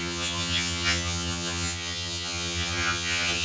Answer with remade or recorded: remade